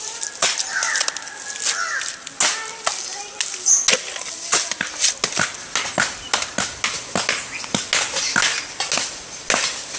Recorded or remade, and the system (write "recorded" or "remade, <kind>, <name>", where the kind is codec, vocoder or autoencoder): recorded